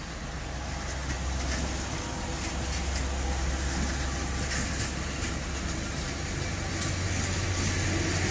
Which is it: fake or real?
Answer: real